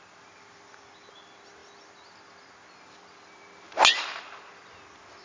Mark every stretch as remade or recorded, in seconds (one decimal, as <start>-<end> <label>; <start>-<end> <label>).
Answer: 0.0-5.2 recorded

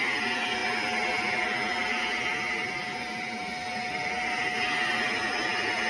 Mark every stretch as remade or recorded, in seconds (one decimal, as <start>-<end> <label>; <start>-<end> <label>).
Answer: 0.0-5.9 recorded

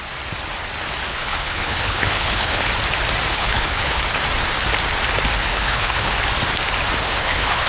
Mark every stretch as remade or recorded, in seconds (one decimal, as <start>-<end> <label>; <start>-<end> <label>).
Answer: 0.0-1.1 recorded; 1.1-2.7 remade; 2.7-3.3 recorded; 3.3-4.0 remade; 4.0-5.5 recorded; 5.5-6.1 remade; 6.1-7.0 recorded; 7.0-7.7 remade